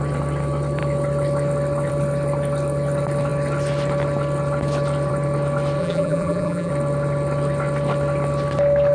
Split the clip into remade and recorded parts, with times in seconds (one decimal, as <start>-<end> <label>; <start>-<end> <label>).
0.0-5.8 recorded; 5.8-6.7 remade; 6.7-8.9 recorded